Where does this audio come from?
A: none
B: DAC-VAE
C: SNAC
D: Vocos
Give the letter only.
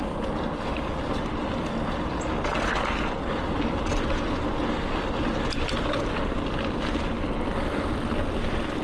A